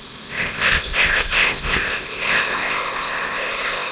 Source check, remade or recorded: remade